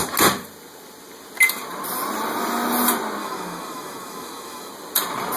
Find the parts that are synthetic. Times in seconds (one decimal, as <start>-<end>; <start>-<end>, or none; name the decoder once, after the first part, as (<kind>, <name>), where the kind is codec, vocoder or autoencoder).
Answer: 3.2-4.7 (autoencoder, DAC-VAE)